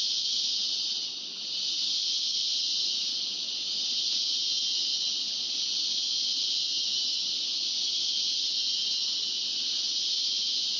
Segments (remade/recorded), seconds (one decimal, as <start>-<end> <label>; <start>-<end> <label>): 0.0-10.8 recorded